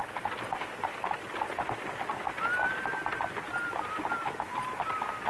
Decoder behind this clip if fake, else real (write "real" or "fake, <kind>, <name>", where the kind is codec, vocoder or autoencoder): real